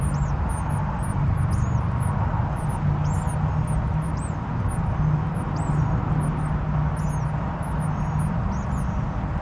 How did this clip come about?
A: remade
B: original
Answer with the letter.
B